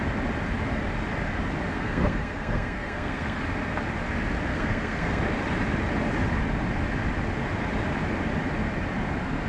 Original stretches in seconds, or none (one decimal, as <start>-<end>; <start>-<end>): 0.0-1.7; 3.4-4.5; 5.2-9.5